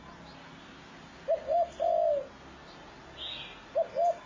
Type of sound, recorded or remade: recorded